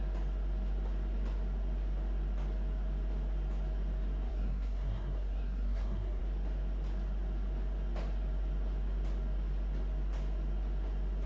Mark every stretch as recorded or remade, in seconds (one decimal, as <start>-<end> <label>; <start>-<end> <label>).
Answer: 0.0-4.3 recorded; 4.3-6.2 remade; 6.2-11.3 recorded